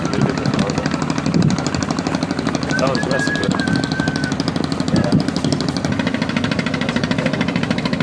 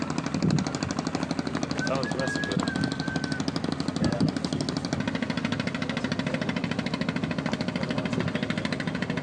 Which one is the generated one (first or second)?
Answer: first